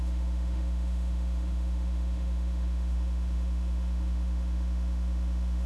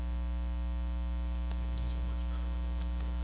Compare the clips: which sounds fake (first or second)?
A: first